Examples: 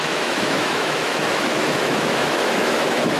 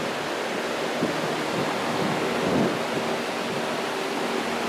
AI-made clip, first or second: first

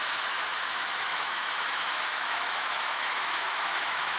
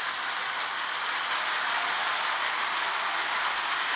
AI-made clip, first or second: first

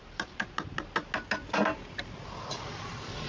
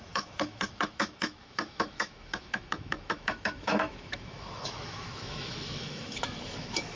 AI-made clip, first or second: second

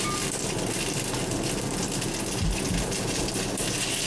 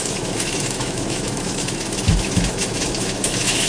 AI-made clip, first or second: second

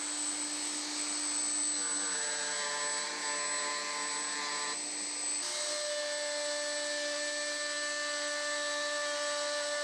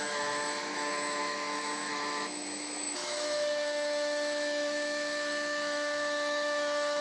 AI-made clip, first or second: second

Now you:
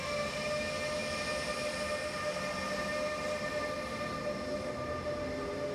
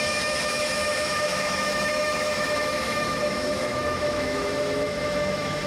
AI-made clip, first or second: second